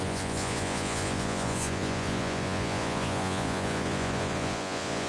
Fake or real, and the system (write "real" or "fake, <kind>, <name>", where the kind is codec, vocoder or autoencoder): fake, vocoder, Vocos